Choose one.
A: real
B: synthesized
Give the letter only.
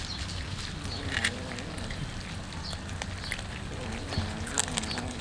A